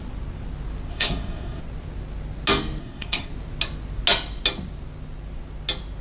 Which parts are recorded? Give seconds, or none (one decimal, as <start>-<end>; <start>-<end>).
0.0-0.9; 1.6-2.8; 3.3-6.0